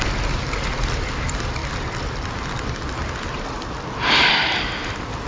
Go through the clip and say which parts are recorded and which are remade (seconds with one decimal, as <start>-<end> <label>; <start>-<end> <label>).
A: 0.0-5.3 recorded